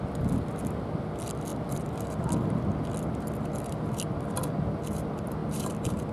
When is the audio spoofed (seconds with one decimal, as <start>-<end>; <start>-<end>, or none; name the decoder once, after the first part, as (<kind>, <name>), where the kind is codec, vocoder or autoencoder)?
5.4-6.1 (vocoder, BigVGAN v2)